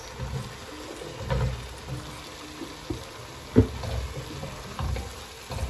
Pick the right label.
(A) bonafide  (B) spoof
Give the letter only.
A